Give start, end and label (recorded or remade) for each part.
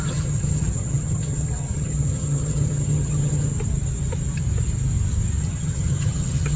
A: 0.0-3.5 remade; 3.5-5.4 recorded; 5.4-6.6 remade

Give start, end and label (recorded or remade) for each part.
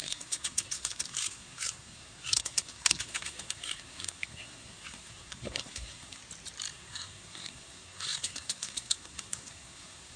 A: 0.0-6.2 remade; 6.2-6.7 recorded; 6.7-10.2 remade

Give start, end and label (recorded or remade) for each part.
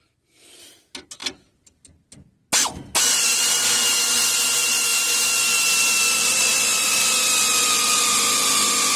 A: 0.0-9.0 recorded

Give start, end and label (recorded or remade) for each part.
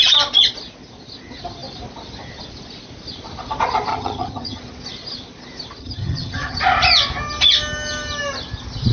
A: 0.0-3.9 recorded; 3.9-4.6 remade; 4.6-5.8 recorded; 5.8-6.6 remade; 6.6-8.9 recorded